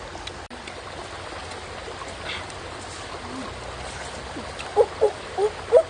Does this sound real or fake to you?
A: real